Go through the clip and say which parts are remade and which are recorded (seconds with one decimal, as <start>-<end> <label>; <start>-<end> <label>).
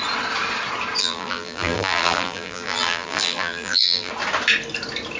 0.0-1.0 recorded; 1.0-4.1 remade; 4.1-5.2 recorded